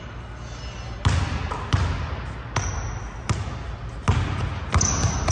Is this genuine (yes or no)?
yes